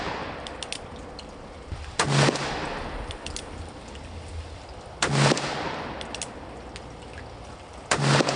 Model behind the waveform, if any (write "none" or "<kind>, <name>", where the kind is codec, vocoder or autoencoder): none